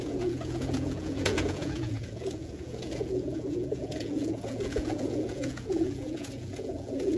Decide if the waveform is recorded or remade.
remade